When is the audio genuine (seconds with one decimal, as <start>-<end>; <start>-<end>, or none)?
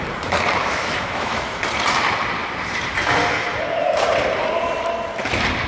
0.0-0.6; 1.6-5.7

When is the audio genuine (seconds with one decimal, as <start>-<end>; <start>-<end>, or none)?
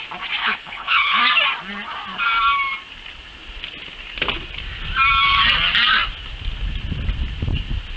0.0-0.4; 1.2-8.0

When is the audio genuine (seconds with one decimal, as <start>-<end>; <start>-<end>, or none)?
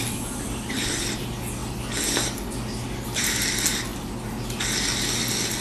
0.0-5.6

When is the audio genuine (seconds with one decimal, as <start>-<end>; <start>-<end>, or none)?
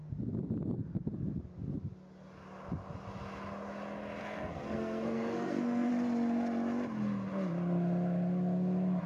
0.0-4.2; 5.9-9.1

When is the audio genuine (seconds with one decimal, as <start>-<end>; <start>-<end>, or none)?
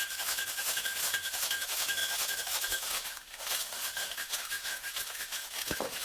none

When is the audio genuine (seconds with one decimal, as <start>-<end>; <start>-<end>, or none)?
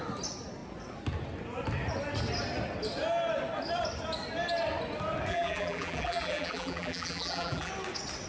0.0-5.3; 7.7-8.3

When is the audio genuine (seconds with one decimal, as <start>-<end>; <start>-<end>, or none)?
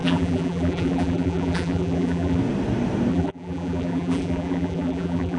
2.4-3.1